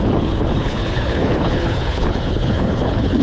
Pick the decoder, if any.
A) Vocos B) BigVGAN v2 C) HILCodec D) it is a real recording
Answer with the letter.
C